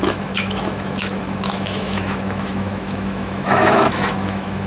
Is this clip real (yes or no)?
no